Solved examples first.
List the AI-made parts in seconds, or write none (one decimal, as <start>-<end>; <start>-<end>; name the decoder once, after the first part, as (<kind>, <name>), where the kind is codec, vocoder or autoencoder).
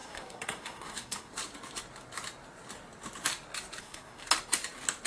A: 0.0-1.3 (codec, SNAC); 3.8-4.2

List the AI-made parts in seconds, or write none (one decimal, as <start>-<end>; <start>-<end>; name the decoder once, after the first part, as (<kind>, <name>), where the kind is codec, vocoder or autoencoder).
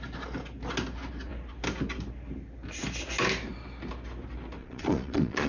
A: 4.6-5.5 (vocoder, Vocos)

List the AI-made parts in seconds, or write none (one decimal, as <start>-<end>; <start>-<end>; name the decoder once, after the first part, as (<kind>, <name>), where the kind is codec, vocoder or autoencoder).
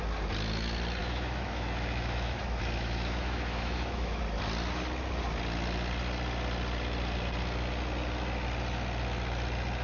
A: 1.0-4.2 (autoencoder, DAC-VAE)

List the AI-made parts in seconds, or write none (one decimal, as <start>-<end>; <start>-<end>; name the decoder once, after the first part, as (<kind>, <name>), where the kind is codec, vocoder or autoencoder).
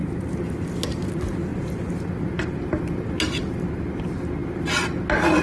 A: none